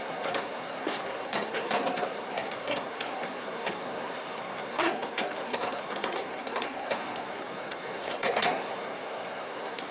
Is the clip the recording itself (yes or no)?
no